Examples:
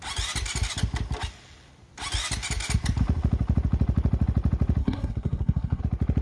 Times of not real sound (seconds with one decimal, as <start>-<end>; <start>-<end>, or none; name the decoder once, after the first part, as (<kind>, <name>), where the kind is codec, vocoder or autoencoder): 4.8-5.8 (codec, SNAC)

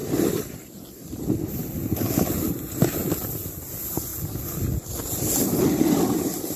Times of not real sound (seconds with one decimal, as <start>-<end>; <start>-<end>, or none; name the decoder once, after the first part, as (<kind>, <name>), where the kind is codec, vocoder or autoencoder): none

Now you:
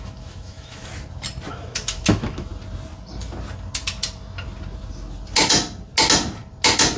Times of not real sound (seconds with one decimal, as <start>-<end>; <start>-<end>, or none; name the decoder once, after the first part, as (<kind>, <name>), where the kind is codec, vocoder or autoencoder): 0.0-0.9 (autoencoder, DAC-VAE); 1.5-2.5

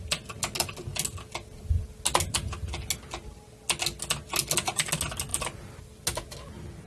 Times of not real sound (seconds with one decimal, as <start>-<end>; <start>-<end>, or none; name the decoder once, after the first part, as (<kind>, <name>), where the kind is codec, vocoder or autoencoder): none

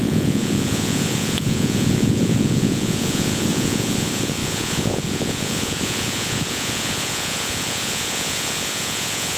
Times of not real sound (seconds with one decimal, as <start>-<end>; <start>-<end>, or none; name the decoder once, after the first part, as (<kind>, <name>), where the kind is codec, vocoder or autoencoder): 0.0-9.4 (vocoder, Vocos)